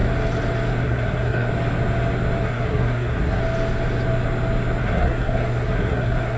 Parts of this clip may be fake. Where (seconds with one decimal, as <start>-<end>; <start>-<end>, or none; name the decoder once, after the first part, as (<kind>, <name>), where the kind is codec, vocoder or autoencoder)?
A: 0.8-1.5 (codec, SNAC); 2.4-3.4; 4.8-6.4